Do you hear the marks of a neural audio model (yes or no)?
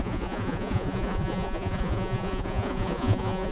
yes